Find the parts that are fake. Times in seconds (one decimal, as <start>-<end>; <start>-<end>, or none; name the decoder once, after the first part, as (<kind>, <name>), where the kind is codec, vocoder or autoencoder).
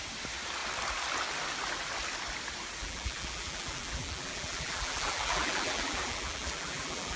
2.8-7.2 (vocoder, BigVGAN v2)